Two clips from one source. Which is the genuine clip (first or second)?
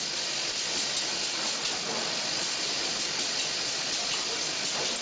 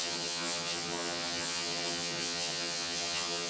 first